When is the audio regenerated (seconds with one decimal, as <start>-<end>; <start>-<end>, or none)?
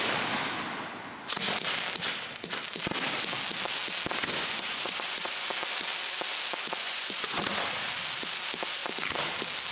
4.2-5.5; 6.8-7.4